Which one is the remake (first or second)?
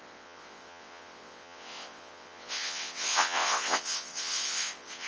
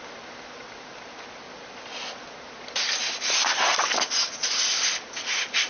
first